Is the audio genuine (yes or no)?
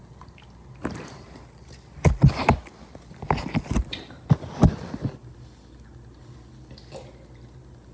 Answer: yes